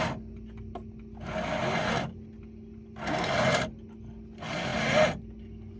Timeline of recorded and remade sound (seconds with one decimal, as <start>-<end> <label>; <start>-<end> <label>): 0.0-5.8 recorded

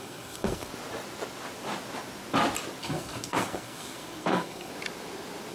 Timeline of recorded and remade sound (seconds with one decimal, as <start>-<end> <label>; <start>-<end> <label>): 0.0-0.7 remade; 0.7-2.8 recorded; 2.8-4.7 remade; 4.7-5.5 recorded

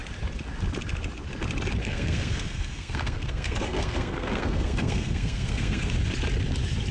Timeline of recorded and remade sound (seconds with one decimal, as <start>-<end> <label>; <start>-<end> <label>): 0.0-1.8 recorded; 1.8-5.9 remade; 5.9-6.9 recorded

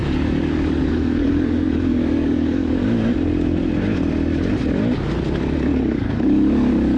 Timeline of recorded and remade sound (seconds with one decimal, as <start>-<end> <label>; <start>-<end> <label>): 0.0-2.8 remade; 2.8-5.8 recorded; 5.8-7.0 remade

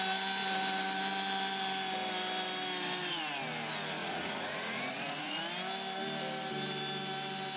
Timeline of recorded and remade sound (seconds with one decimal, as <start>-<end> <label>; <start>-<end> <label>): 0.0-4.0 recorded; 4.0-5.4 remade; 5.4-7.6 recorded